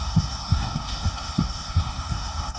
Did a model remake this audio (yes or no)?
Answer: yes